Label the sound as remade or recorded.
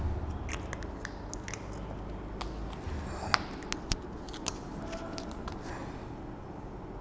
recorded